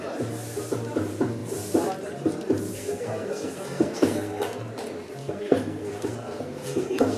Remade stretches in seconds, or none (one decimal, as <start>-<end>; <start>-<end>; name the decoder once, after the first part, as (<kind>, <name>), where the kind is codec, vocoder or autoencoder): 2.7-4.7 (codec, SNAC); 5.2-7.2